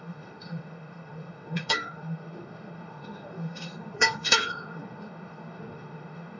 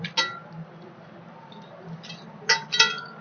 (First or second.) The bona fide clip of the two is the second